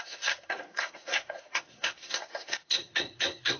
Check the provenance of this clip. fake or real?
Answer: fake